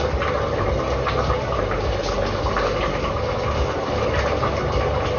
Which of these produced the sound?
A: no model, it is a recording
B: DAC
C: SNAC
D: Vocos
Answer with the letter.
A